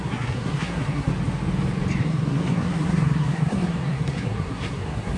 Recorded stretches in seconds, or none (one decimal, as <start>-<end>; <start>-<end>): 1.1-2.0